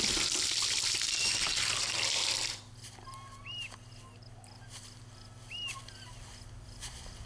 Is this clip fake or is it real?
real